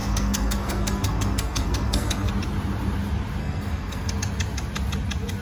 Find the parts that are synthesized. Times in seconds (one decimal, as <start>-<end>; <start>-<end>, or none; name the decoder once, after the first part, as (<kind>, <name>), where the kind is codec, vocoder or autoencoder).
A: 0.0-2.3 (codec, SNAC); 3.4-4.1

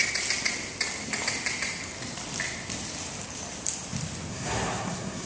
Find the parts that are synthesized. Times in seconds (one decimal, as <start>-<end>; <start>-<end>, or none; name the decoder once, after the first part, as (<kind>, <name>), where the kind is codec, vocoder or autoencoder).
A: 4.3-5.3 (codec, SNAC)

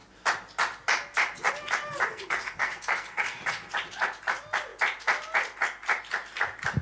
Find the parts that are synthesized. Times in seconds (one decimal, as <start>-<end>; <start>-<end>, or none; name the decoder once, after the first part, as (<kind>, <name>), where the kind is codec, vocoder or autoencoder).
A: 2.1-3.4 (codec, SNAC)

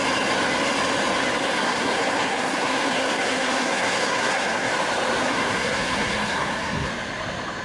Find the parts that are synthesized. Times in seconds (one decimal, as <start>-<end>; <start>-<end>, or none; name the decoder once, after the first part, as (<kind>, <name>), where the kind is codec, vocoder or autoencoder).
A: 1.4-4.7 (codec, SNAC); 5.2-6.9